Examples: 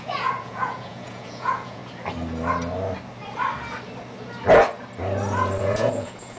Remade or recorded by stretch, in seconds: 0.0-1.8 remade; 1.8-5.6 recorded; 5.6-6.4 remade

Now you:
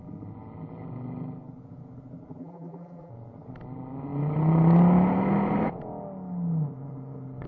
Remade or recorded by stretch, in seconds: 0.0-2.4 recorded; 2.4-3.1 remade; 3.1-7.5 recorded

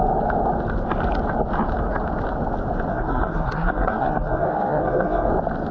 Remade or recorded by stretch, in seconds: 0.0-2.9 recorded; 2.9-5.3 remade; 5.3-5.7 recorded

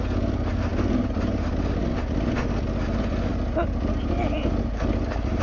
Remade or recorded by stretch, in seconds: 0.0-5.4 recorded

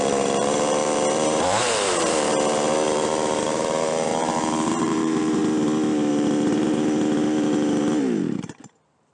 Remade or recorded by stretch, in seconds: 0.0-5.4 remade; 5.4-6.1 recorded; 6.1-9.1 remade

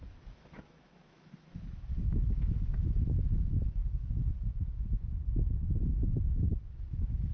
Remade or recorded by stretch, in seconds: 0.0-7.3 remade

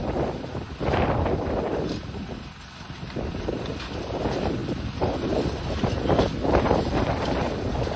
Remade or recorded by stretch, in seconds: 0.0-8.0 recorded

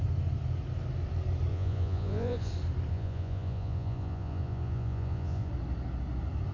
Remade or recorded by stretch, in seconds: 0.0-1.5 recorded; 1.5-2.5 remade; 2.5-2.9 recorded; 2.9-5.5 remade; 5.5-6.5 recorded